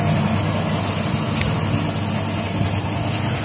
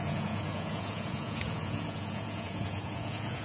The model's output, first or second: second